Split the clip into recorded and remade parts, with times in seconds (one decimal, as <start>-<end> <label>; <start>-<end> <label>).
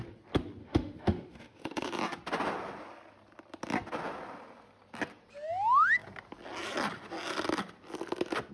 0.0-0.6 recorded; 0.6-1.9 remade; 1.9-8.5 recorded